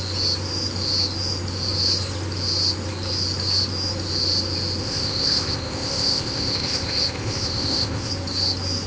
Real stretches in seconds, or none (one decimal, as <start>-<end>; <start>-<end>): 0.0-4.8; 8.1-8.9